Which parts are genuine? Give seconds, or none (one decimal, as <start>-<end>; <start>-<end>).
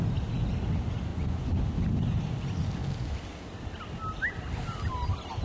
0.0-1.1; 1.6-5.4